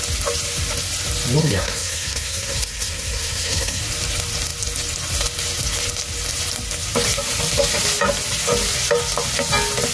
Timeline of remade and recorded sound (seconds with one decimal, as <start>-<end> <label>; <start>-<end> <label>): 0.0-1.4 recorded; 1.4-3.8 remade; 3.8-9.9 recorded